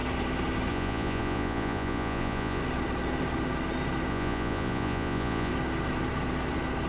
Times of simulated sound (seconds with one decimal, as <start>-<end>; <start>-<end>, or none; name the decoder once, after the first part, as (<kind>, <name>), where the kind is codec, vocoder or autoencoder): 0.7-2.6 (vocoder, Vocos); 4.1-5.5